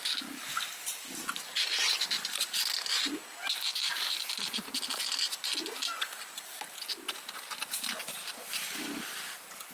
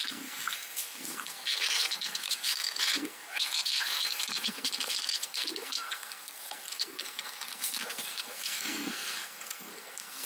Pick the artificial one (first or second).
second